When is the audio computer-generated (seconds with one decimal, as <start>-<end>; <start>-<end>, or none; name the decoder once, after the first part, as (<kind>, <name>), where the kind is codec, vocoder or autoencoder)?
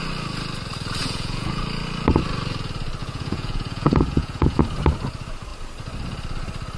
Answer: 1.0-1.6 (vocoder, Vocos); 3.0-4.6